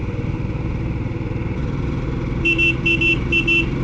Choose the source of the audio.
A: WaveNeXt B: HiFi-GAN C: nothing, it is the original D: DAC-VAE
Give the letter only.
C